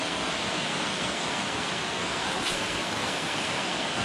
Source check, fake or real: fake